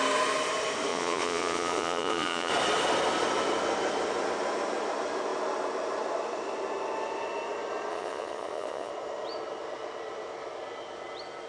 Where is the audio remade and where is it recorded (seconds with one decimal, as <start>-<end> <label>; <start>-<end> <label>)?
0.0-0.9 recorded; 0.9-2.5 remade; 2.5-7.9 recorded; 7.9-8.9 remade; 8.9-11.5 recorded

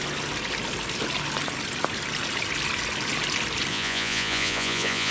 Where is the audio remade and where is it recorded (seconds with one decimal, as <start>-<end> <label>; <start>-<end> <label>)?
0.0-3.7 recorded; 3.7-5.1 remade

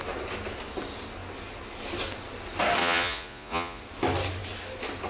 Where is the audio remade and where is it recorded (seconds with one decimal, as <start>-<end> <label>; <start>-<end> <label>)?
0.0-2.8 recorded; 2.8-3.8 remade; 3.8-5.1 recorded

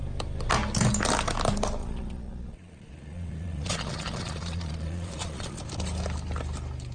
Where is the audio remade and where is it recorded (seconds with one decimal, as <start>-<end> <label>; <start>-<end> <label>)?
0.0-1.8 recorded; 1.8-5.6 remade; 5.6-6.9 recorded